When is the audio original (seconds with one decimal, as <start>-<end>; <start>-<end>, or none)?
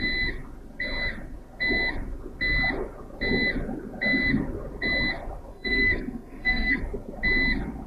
0.0-5.5; 6.8-7.9